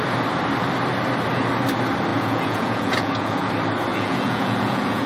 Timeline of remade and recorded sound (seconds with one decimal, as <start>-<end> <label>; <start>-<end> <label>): 0.0-2.1 recorded; 2.1-3.5 remade; 3.5-3.9 recorded; 3.9-5.1 remade

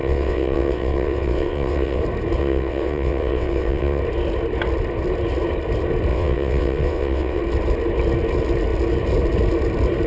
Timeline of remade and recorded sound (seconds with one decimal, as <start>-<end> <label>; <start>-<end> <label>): 0.0-2.0 remade; 2.0-2.4 recorded; 2.4-4.0 remade; 4.0-6.1 recorded; 6.1-7.4 remade; 7.4-10.1 recorded

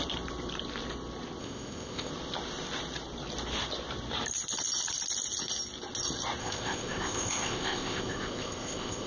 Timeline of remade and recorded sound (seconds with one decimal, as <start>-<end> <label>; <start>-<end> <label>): 0.0-1.4 recorded; 1.4-2.1 remade; 2.1-6.4 recorded; 6.4-9.1 remade

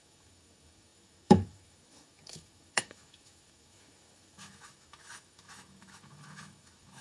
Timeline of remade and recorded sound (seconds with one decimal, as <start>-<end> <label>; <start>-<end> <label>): 0.0-7.0 remade

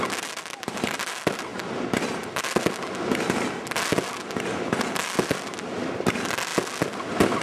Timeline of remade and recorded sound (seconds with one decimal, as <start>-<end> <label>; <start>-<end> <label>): 0.0-1.5 remade; 1.5-4.9 recorded; 4.9-6.5 remade; 6.5-7.4 recorded

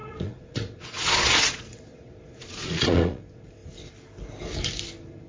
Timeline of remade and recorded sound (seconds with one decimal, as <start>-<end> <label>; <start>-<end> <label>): 0.0-3.2 remade; 3.2-5.3 recorded

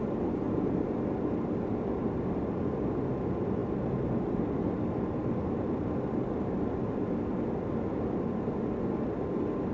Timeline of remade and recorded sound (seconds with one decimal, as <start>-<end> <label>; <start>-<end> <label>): 0.0-9.7 recorded

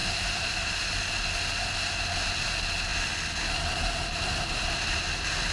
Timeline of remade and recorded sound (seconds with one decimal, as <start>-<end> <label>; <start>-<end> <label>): 0.0-5.5 recorded